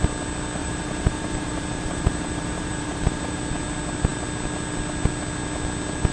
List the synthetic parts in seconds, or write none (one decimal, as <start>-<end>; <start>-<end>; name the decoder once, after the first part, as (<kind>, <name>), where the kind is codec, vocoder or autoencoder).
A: 0.6-3.4 (vocoder, BigVGAN v2)